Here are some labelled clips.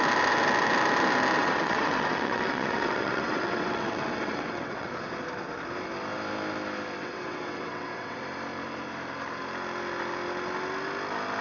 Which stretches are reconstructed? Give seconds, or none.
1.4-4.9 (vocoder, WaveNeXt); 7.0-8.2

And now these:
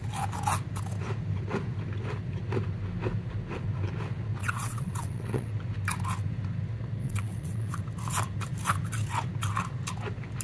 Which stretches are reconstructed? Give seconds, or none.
4.4-5.5 (vocoder, WaveNeXt); 7.0-7.8

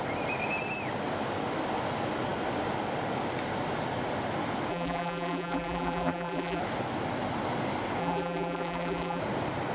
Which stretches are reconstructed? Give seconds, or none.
4.7-6.6 (vocoder, BigVGAN v2); 8.0-9.2

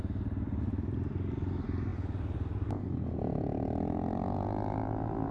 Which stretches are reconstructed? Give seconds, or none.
none

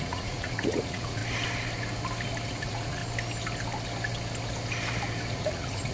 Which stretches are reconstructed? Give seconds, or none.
0.0-1.2 (vocoder, Vocos); 2.5-3.0; 5.3-5.9

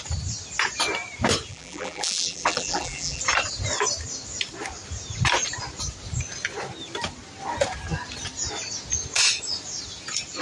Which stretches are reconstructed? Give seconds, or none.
1.5-3.2 (vocoder, BigVGAN v2)

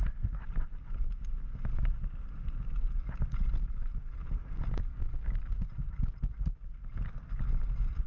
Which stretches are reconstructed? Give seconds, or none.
4.9-5.4 (codec, DAC)

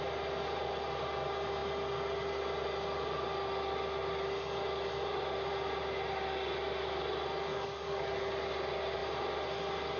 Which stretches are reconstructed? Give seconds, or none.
7.5-8.1 (codec, DAC)